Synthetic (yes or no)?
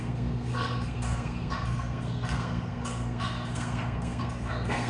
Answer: yes